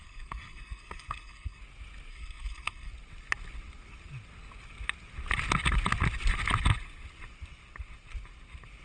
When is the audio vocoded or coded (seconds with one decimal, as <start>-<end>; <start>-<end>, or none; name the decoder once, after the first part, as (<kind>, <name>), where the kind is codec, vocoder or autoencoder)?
0.0-1.6 (codec, SNAC); 2.1-2.9